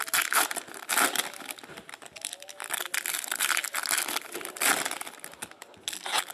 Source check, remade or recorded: recorded